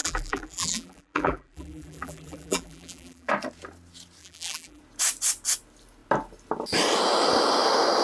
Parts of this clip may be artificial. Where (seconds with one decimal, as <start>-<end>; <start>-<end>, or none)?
0.0-3.3; 4.2-4.8